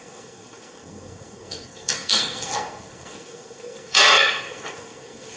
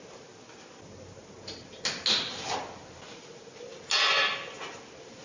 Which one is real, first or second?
second